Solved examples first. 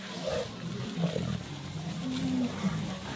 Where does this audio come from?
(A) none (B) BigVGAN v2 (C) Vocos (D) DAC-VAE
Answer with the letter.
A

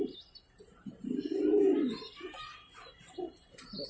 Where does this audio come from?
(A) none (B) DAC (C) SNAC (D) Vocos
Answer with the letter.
A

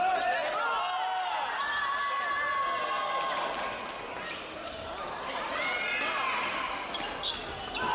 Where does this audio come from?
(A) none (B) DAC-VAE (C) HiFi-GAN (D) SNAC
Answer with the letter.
A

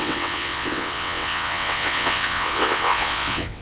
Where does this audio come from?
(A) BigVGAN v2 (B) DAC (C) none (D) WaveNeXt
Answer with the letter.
D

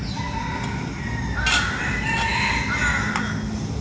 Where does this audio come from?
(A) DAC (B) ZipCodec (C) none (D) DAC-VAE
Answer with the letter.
C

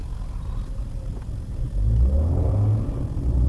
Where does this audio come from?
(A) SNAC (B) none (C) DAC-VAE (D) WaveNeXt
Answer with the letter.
B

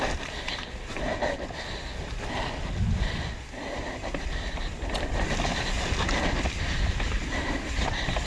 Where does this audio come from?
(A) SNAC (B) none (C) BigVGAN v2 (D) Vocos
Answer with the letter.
B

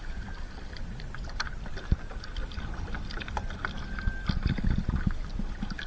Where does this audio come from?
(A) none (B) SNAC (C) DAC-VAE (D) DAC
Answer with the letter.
A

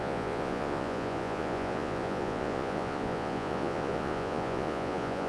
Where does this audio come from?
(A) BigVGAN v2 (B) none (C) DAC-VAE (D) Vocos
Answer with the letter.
D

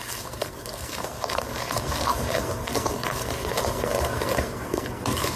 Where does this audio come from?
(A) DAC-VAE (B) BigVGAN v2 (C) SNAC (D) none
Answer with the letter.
C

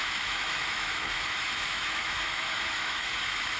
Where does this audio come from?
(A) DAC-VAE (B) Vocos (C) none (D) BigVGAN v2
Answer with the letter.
A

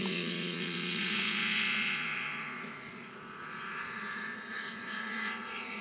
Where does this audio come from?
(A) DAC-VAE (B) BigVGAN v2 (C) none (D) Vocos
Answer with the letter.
D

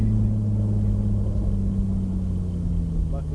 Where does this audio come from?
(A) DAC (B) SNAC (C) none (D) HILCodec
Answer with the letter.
C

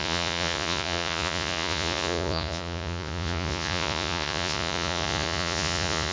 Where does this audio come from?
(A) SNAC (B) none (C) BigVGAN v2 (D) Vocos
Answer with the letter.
D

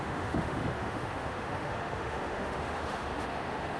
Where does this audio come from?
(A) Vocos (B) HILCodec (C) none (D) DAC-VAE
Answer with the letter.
D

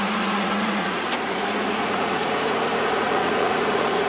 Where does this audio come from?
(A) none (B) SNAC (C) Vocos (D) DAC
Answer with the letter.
C